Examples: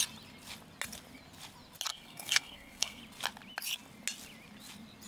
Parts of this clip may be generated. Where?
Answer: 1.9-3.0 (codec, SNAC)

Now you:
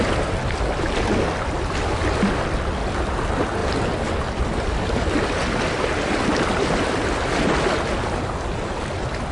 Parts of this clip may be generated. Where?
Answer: none

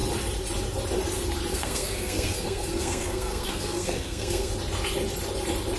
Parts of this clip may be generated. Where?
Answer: 1.5-4.5 (codec, SNAC)

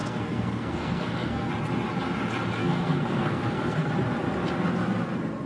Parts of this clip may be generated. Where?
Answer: 0.0-1.5 (codec, SNAC); 2.6-3.9

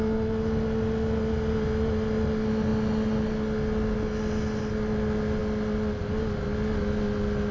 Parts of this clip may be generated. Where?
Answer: none

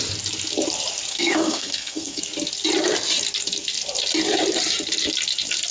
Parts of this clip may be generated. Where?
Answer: 1.1-2.2 (codec, SNAC)